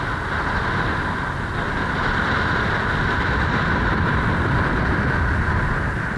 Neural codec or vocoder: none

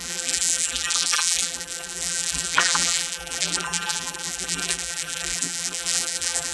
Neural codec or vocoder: vocoder, BigVGAN v2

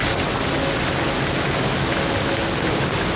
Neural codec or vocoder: none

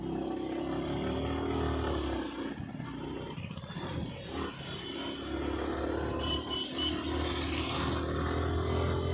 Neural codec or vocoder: none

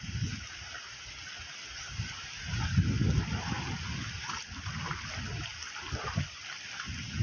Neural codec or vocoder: none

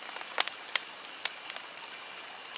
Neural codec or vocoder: none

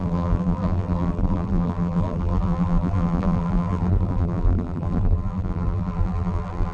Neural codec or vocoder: vocoder, BigVGAN v2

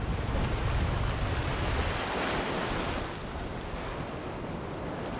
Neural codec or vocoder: none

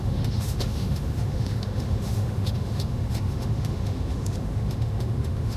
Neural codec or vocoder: autoencoder, DAC-VAE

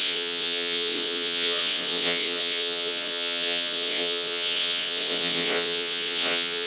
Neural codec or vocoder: vocoder, WaveNeXt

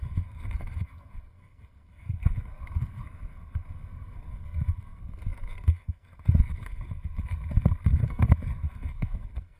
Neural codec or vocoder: codec, SNAC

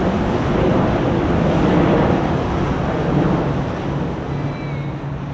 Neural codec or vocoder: none